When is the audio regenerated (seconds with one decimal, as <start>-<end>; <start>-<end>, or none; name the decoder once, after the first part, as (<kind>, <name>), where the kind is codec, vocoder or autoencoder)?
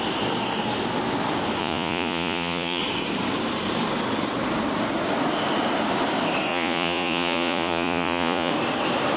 1.6-2.8 (vocoder, Vocos); 6.5-8.5